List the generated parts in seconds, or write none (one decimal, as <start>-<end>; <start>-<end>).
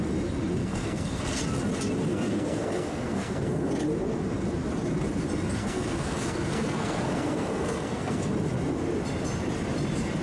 0.6-1.4; 2.1-3.7; 5.6-8.3